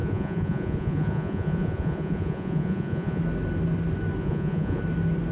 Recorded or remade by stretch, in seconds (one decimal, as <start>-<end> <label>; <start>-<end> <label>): 0.0-3.2 remade; 3.2-4.2 recorded; 4.2-4.8 remade; 4.8-5.3 recorded

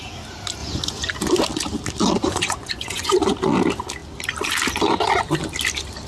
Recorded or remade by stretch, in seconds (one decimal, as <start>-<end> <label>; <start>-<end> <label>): 0.0-0.6 recorded; 0.6-1.1 remade; 1.1-2.2 recorded; 2.2-3.3 remade; 3.3-6.1 recorded

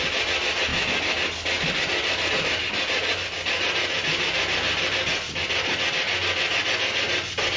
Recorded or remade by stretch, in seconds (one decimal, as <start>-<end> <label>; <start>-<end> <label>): 0.0-7.6 recorded

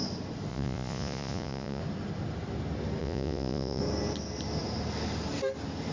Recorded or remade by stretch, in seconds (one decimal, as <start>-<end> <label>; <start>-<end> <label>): 0.0-0.5 recorded; 0.5-1.8 remade; 1.8-3.0 recorded; 3.0-3.8 remade; 3.8-5.9 recorded

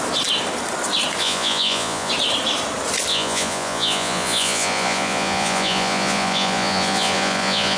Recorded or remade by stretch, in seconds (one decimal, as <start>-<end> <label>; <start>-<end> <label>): 0.0-1.2 recorded; 1.2-2.1 remade; 2.1-3.1 recorded; 3.1-7.8 remade

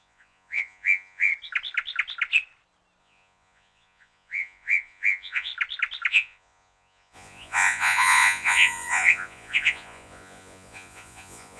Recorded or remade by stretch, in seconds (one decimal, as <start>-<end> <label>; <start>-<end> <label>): 0.0-1.3 remade; 1.3-3.0 recorded; 3.0-5.5 remade; 5.5-6.1 recorded; 6.1-11.6 remade

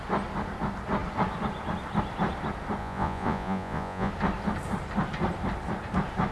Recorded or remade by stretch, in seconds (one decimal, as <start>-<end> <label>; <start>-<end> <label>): 0.0-2.8 recorded; 2.8-4.1 remade; 4.1-6.3 recorded